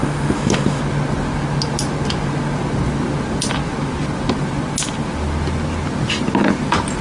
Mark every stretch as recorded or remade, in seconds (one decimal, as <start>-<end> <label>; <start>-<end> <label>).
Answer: 0.0-0.8 remade; 0.8-7.0 recorded